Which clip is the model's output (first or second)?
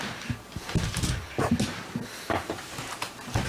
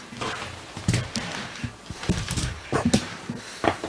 second